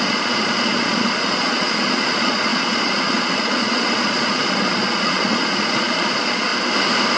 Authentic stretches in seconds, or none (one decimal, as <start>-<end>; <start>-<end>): 6.5-7.2